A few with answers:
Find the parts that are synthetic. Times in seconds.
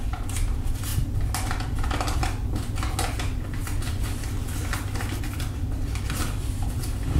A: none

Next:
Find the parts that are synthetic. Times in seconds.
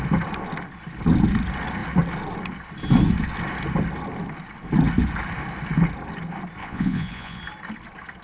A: 6.6-7.4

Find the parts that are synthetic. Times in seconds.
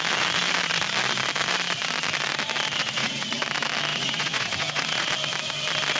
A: 2.8-3.3; 3.9-5.1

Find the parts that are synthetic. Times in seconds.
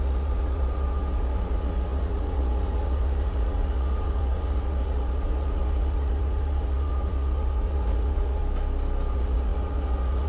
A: 0.0-8.4; 9.1-10.3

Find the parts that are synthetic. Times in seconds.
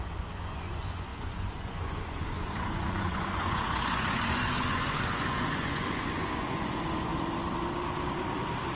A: 0.0-7.1